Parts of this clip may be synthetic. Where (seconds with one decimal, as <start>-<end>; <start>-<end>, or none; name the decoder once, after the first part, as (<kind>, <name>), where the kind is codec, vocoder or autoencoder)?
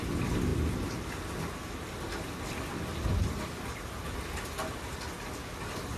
0.5-1.2 (vocoder, BigVGAN v2)